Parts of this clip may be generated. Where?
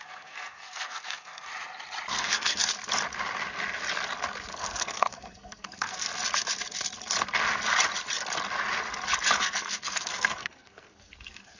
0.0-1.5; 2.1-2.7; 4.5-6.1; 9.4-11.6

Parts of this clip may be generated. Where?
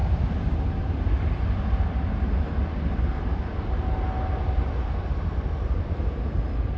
none